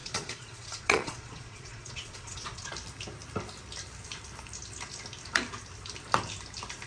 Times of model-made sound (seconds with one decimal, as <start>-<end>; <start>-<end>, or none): 0.0-2.7